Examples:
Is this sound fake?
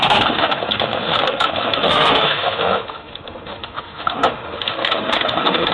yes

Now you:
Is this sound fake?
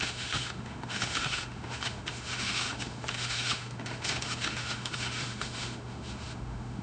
yes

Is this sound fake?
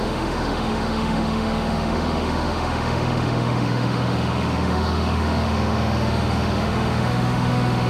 yes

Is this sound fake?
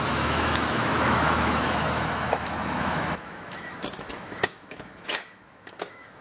yes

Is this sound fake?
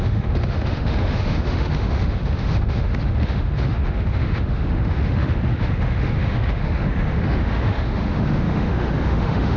yes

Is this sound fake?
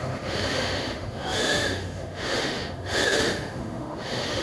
yes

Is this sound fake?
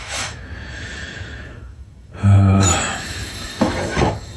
yes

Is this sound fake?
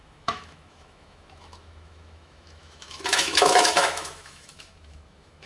yes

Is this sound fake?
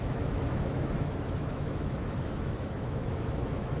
yes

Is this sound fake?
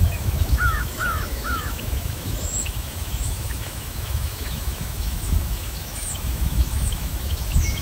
yes